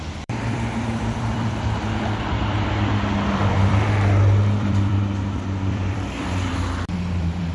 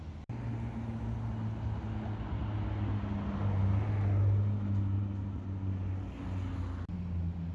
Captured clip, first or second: second